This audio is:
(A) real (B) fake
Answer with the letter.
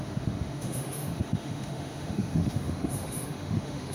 B